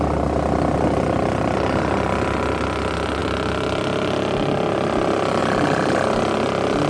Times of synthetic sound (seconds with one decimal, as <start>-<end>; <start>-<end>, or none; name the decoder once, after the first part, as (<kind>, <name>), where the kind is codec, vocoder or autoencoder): none